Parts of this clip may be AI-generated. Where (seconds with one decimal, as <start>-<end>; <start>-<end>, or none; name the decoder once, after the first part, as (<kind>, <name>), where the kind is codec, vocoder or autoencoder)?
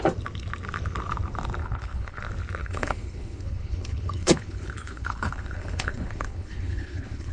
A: 1.6-2.2 (codec, HILCodec); 2.6-7.3